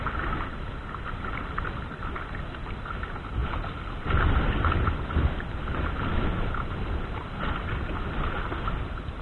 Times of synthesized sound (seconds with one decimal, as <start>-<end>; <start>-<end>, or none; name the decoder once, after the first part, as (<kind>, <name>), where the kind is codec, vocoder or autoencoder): none